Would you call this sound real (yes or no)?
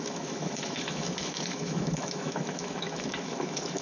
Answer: no